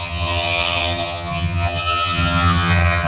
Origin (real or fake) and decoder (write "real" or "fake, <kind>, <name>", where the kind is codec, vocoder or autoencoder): fake, vocoder, HiFi-GAN